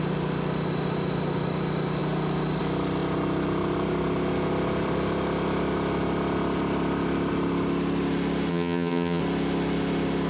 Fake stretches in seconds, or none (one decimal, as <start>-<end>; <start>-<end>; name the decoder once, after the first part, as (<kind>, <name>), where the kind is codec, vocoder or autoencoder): 8.5-9.2 (vocoder, HiFi-GAN)